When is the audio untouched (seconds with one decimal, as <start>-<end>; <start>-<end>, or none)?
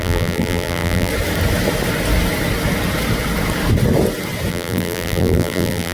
1.1-4.5